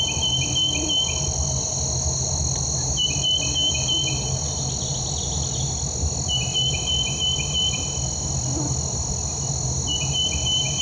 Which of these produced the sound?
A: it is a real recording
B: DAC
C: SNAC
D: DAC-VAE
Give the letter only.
A